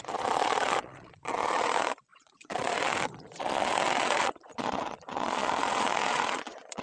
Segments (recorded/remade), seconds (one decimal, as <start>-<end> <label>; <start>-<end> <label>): 0.0-6.8 remade